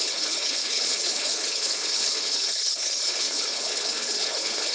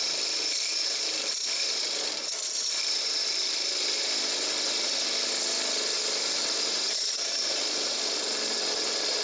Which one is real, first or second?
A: second